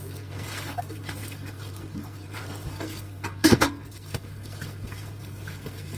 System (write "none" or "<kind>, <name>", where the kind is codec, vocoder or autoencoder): codec, SNAC